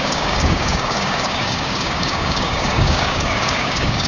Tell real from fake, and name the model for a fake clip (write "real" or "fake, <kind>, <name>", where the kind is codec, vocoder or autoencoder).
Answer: fake, codec, DAC